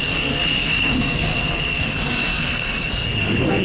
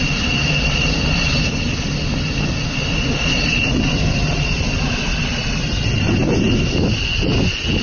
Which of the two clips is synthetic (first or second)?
first